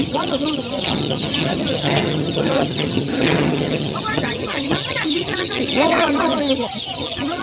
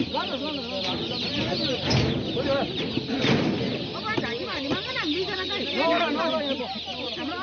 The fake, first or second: first